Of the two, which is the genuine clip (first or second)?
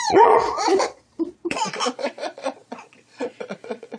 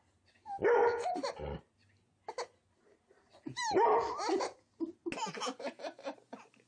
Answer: second